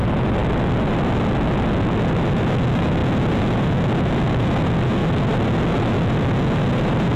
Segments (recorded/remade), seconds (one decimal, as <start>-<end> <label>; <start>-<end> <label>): 0.0-7.2 recorded